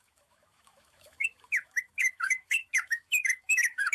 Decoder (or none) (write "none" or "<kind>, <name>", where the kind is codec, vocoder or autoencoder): autoencoder, DAC-VAE